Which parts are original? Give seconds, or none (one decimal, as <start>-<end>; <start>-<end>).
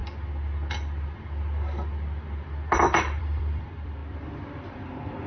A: 0.0-3.2; 4.0-4.7